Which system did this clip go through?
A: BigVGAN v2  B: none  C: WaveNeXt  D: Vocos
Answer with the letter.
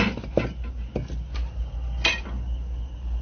B